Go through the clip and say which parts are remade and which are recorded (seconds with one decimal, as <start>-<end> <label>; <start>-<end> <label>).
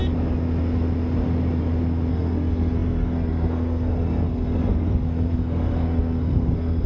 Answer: 0.0-2.1 recorded; 2.1-6.9 remade